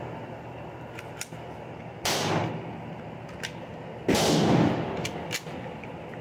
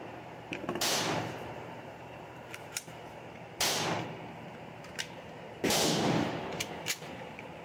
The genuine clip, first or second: first